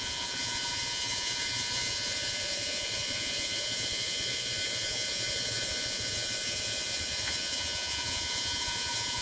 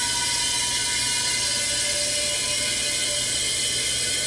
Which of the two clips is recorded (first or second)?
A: second